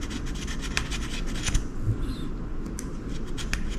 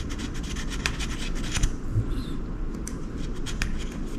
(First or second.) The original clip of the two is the first